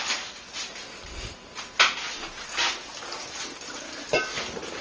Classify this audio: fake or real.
real